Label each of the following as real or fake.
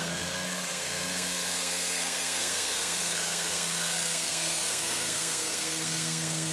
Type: fake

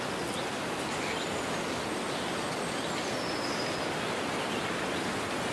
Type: real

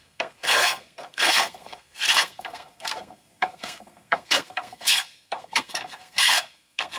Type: fake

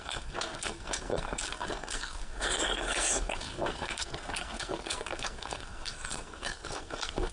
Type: fake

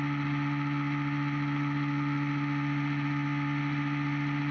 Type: real